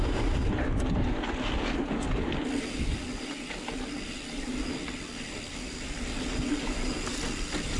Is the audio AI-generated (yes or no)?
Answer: no